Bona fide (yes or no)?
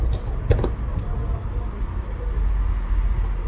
yes